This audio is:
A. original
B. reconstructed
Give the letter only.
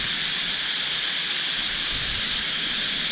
A